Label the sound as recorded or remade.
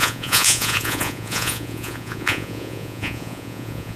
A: remade